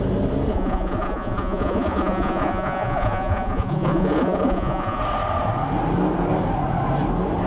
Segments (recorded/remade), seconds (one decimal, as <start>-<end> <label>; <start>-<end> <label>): 0.0-0.5 recorded; 0.5-5.0 remade; 5.0-7.5 recorded